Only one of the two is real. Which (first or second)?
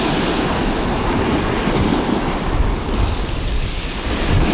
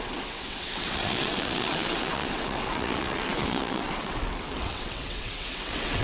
first